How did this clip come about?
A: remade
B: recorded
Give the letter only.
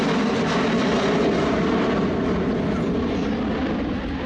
B